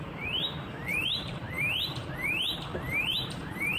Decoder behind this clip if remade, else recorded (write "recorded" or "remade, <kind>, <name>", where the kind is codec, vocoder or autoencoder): remade, vocoder, BigVGAN v2